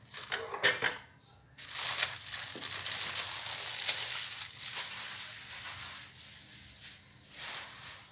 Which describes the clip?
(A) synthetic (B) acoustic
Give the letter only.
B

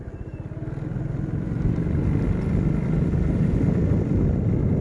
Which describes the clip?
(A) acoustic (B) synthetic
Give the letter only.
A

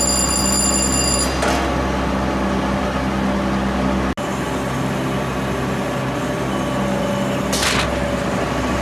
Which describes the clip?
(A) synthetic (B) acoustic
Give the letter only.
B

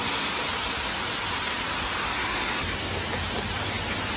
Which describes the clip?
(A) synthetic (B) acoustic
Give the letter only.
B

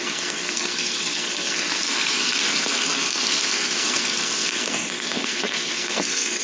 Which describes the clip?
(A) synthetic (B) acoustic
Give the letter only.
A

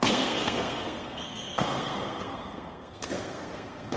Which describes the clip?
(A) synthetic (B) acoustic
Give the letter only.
A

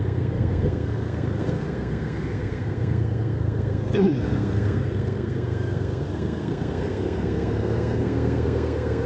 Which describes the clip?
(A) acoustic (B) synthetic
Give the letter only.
B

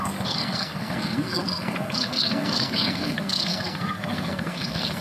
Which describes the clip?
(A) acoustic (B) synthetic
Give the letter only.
B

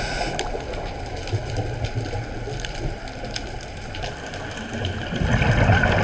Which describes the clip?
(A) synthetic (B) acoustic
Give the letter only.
B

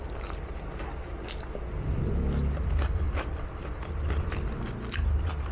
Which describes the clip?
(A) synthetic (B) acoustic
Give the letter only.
B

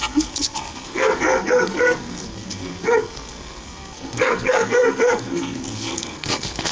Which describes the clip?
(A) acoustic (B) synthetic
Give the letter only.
B